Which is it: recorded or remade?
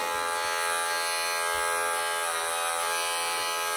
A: recorded